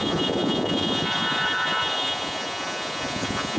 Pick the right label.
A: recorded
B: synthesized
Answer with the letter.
B